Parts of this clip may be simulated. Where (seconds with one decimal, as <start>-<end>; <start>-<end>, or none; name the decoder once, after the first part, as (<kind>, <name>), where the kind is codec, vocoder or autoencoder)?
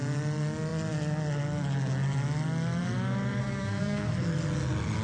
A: 3.4-4.1 (codec, SNAC)